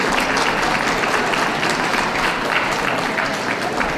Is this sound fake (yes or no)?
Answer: no